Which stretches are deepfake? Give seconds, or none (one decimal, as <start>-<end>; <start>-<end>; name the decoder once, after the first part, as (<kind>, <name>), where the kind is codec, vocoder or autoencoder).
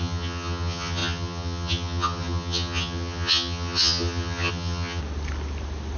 0.0-5.0 (vocoder, HiFi-GAN)